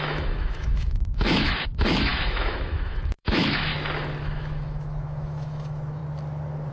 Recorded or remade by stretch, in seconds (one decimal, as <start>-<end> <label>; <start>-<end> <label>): 0.0-3.7 remade; 3.7-4.2 recorded; 4.2-6.0 remade; 6.0-6.7 recorded